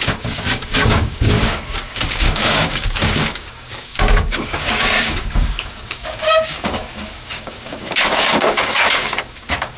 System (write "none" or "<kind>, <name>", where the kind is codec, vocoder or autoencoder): codec, DAC